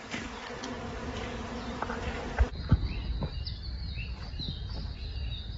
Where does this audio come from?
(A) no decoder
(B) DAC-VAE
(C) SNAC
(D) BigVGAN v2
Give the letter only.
A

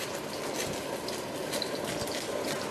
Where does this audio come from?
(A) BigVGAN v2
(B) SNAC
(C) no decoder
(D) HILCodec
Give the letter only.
A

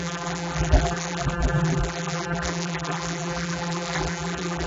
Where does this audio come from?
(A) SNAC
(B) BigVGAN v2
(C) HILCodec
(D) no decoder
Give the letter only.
B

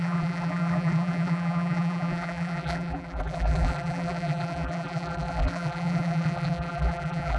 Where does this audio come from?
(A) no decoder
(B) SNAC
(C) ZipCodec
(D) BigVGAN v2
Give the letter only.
D